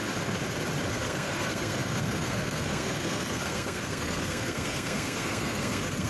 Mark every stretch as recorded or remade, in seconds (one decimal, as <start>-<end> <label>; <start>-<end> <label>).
0.0-0.9 recorded; 0.9-6.1 remade